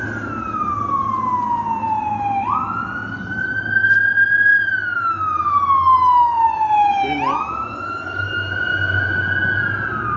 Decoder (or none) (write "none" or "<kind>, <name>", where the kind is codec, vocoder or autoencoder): none